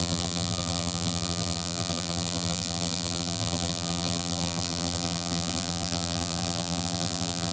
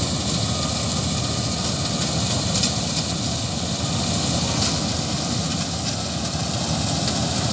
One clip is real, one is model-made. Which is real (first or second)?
second